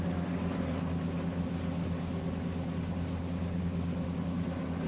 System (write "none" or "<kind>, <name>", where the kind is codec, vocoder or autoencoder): none